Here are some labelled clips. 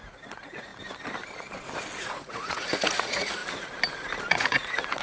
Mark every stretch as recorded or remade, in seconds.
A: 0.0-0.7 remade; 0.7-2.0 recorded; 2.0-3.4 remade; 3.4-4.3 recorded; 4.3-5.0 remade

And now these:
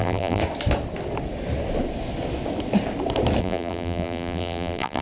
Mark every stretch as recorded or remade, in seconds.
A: 0.0-0.4 remade; 0.4-3.4 recorded; 3.4-5.0 remade

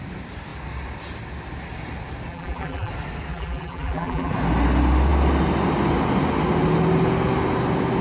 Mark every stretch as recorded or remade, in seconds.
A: 0.0-2.3 recorded; 2.3-2.9 remade; 2.9-3.3 recorded; 3.3-4.3 remade; 4.3-8.0 recorded

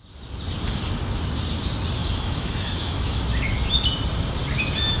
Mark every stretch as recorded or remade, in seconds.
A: 0.0-2.0 recorded; 2.0-3.2 remade; 3.2-5.0 recorded

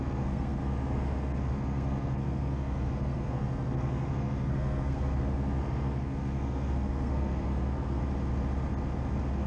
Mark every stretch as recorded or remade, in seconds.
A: 0.0-8.0 remade; 8.0-9.5 recorded

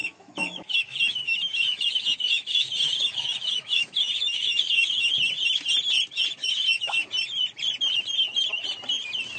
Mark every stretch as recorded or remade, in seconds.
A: 0.0-5.1 remade; 5.1-6.4 recorded; 6.4-7.1 remade; 7.1-9.4 recorded